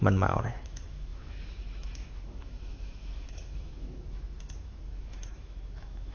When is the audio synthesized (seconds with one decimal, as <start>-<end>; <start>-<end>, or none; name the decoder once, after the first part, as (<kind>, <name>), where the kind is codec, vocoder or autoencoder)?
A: 0.0-6.1 (autoencoder, DAC-VAE)